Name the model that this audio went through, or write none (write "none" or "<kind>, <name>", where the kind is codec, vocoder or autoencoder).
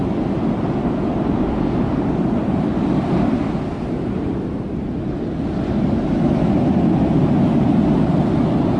none